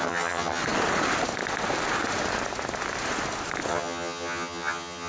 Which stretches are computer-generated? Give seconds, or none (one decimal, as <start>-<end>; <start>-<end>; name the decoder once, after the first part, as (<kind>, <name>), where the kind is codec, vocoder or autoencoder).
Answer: 0.0-0.6 (vocoder, HiFi-GAN); 3.7-5.1